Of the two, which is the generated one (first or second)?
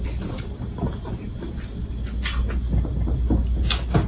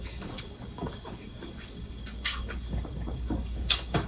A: second